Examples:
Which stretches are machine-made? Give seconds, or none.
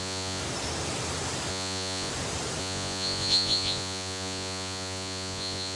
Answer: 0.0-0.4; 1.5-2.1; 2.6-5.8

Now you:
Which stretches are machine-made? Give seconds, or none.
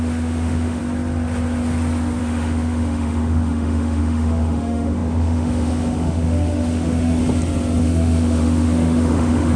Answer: 0.0-0.8; 2.2-7.2; 7.8-9.6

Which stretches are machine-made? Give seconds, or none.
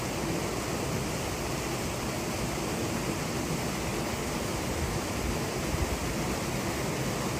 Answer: none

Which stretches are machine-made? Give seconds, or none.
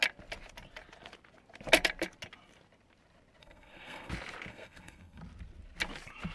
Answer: 3.4-4.1; 4.5-5.2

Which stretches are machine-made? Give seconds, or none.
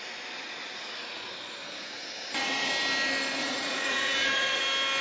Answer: 0.4-0.9; 1.6-2.7; 3.4-4.6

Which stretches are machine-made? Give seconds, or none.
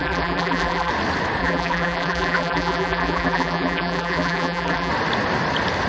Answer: 0.0-0.9; 1.4-4.9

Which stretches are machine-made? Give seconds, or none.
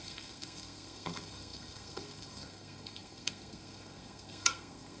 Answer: 0.0-5.0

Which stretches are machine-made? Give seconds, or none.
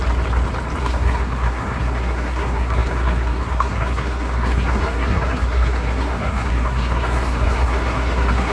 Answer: 0.8-8.5